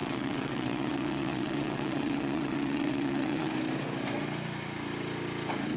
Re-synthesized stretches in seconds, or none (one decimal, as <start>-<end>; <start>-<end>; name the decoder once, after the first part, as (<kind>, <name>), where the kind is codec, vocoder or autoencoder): 0.0-3.5 (vocoder, WaveNeXt)